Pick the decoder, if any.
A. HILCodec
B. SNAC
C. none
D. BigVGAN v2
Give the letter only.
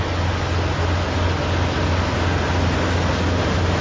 C